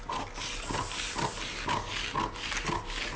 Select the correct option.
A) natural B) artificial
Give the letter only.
A